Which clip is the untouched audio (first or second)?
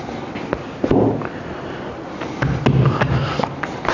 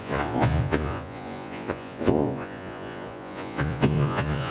first